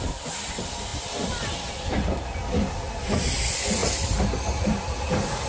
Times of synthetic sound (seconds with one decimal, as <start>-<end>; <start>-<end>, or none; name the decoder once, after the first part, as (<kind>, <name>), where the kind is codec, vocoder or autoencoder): none